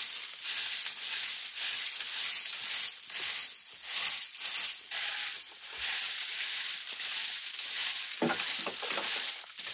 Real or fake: real